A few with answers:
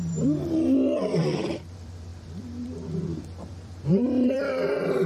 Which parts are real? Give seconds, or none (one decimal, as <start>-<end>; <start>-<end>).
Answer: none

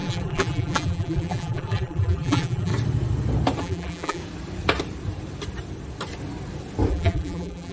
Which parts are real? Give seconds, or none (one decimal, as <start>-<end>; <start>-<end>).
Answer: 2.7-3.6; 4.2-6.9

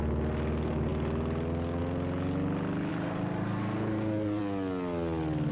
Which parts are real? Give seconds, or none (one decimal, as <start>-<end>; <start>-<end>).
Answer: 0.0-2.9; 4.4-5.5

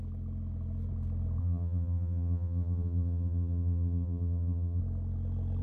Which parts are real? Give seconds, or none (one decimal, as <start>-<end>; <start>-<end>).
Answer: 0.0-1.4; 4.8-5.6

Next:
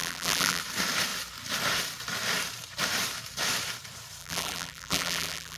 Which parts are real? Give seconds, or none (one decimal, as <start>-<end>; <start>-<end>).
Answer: 0.6-4.2

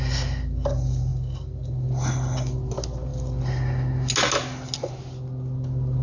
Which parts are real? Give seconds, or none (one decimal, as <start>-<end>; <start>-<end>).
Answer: 0.0-6.0